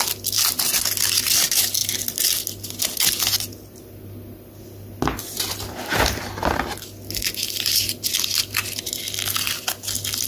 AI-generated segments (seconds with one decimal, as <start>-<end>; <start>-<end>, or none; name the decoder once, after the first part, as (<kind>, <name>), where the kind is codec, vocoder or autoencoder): none